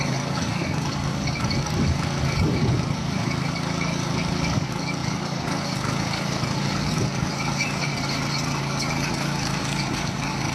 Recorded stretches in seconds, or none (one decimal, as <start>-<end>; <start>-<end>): 7.9-8.6